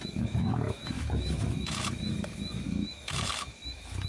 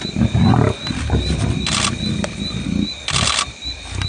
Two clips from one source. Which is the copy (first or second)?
first